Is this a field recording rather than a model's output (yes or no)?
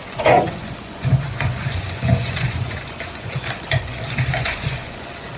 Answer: no